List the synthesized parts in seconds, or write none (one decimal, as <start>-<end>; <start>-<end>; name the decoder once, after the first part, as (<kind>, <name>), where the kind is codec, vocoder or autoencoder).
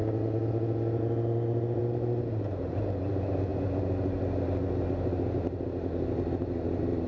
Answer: 1.8-2.6 (vocoder, BigVGAN v2)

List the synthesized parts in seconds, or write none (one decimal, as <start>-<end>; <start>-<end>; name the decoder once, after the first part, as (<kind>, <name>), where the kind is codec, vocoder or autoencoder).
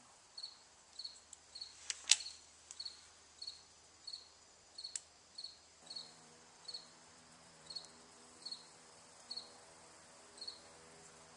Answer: 6.0-9.3 (vocoder, BigVGAN v2)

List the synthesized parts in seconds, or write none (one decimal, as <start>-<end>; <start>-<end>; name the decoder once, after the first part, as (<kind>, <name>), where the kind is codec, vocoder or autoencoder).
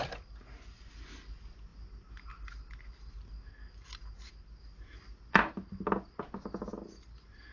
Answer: none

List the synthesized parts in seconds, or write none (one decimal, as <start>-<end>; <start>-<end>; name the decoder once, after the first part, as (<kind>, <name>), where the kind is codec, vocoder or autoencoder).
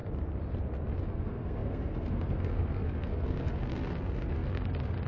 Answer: 1.1-5.1 (codec, SNAC)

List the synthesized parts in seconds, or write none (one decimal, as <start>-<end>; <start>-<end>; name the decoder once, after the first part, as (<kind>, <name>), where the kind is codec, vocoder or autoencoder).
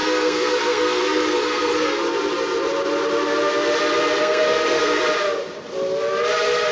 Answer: 0.0-2.0 (codec, SNAC); 4.2-5.0